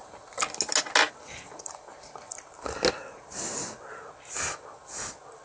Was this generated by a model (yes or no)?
no